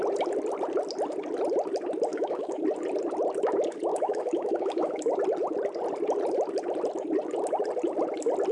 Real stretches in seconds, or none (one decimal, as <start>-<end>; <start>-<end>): 0.0-2.1; 2.6-3.9; 5.0-8.5